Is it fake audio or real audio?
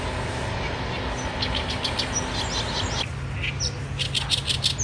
real